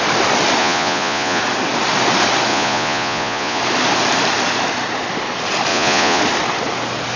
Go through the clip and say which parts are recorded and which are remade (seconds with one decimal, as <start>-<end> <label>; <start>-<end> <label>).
0.0-0.6 recorded; 0.6-1.4 remade; 1.4-2.5 recorded; 2.5-3.6 remade; 3.6-5.7 recorded; 5.7-6.2 remade; 6.2-7.2 recorded